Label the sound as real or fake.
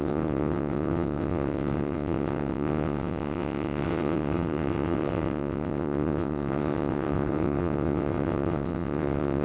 fake